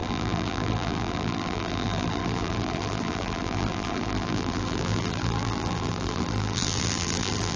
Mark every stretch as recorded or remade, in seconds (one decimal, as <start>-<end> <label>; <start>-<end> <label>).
0.0-7.6 remade